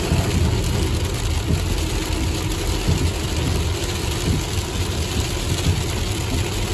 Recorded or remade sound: recorded